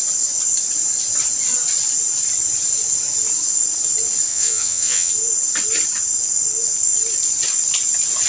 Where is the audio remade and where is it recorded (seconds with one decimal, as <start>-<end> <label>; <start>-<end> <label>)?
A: 0.0-4.3 recorded; 4.3-5.1 remade; 5.1-8.3 recorded